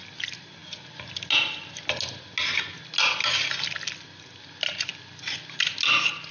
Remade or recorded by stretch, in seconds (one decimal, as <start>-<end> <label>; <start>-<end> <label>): 0.0-6.3 recorded

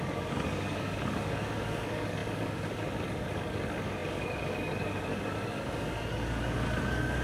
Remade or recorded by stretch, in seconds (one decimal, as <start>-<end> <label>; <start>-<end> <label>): 0.0-7.2 remade